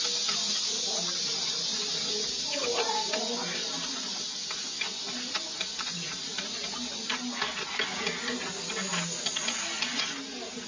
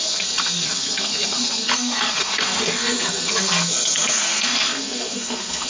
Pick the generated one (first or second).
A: second